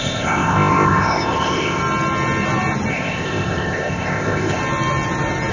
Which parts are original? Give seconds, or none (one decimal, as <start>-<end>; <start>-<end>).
1.8-2.9; 4.6-5.5